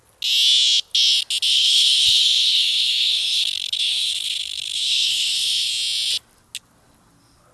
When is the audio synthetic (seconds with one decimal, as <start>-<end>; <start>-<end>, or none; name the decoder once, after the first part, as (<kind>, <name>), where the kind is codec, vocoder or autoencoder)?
1.5-5.7 (codec, HILCodec)